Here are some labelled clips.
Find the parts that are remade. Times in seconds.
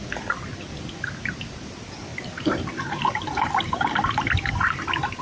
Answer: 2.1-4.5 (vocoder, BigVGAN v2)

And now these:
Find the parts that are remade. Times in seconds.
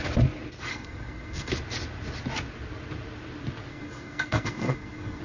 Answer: 0.7-1.5 (codec, SNAC); 3.7-5.2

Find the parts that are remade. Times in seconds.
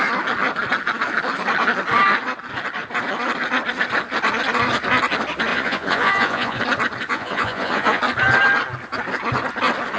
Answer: 5.5-6.6 (vocoder, Vocos); 7.1-8.0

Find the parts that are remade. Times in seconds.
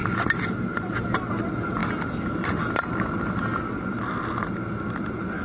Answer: none